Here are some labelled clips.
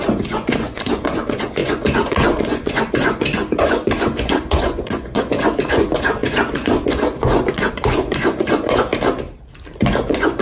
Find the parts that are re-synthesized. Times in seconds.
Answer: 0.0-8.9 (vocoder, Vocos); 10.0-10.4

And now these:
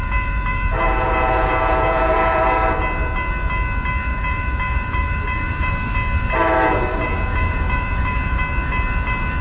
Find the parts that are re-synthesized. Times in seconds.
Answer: 0.0-2.4 (vocoder, Vocos); 4.1-5.7; 6.9-8.4